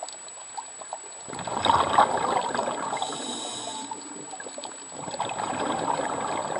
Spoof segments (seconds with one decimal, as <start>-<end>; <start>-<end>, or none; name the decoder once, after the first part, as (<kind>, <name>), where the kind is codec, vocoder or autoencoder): none